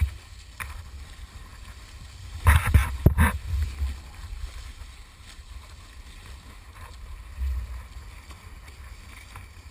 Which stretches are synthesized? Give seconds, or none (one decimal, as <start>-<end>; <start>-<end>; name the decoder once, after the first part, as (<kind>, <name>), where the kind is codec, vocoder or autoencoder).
none